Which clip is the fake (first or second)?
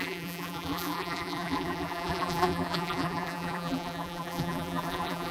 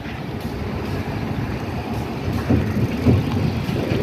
first